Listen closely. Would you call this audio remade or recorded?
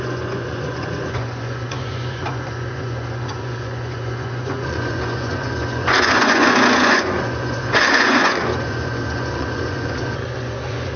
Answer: remade